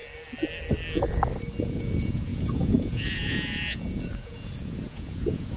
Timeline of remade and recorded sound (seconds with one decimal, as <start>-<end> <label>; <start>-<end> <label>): 0.0-1.6 recorded; 1.6-5.6 remade